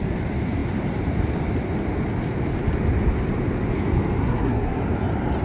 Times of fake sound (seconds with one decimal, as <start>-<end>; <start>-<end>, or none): 4.2-4.8

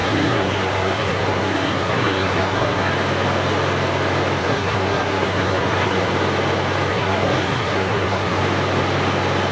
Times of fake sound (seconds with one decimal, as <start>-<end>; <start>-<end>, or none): 0.0-2.9; 4.4-6.1; 6.9-8.4

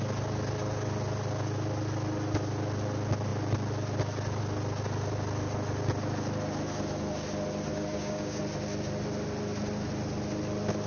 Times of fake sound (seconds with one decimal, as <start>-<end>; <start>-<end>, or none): 7.7-8.4

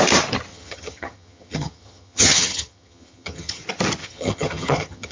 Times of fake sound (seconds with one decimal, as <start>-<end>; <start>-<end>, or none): 0.5-3.6; 4.0-5.1

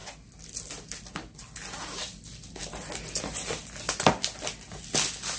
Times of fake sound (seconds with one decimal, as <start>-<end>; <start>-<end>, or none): none

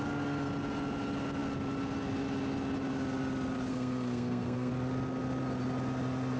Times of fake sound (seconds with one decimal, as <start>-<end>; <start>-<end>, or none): 3.7-4.7

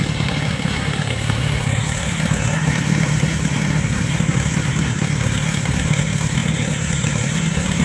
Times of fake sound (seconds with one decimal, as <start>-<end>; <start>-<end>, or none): 0.0-7.8